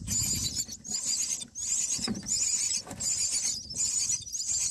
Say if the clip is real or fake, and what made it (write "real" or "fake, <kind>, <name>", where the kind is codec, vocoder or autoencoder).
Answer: real